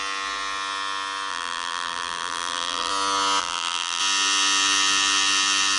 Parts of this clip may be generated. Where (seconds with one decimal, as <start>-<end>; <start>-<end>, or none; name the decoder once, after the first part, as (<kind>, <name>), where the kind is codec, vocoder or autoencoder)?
1.3-2.9 (vocoder, BigVGAN v2); 3.4-4.0